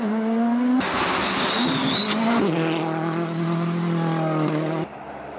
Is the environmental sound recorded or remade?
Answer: recorded